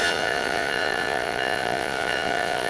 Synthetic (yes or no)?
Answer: yes